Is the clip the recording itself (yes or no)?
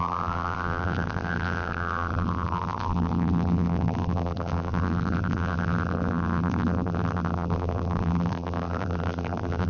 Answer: no